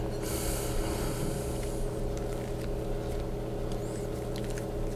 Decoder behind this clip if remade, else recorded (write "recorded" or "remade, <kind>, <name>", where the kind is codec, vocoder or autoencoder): recorded